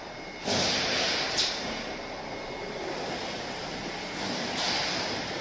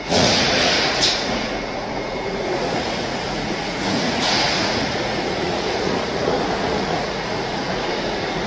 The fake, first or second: second